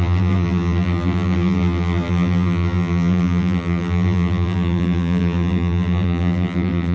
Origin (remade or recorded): remade